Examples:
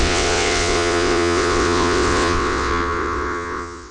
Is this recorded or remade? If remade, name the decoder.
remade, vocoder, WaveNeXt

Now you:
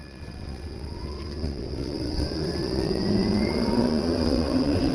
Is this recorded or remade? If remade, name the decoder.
remade, vocoder, WaveNeXt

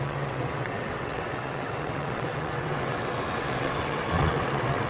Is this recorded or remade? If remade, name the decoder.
remade, vocoder, WaveNeXt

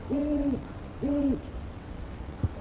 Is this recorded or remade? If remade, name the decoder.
remade, vocoder, WaveNeXt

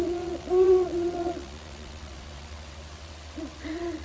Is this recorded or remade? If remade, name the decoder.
remade, vocoder, WaveNeXt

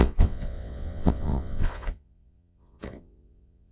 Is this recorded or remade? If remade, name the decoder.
remade, vocoder, WaveNeXt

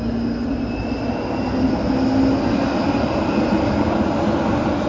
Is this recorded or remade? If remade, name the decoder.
recorded